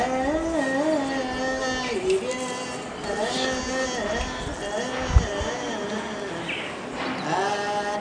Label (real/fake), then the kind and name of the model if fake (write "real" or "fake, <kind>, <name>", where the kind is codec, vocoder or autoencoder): real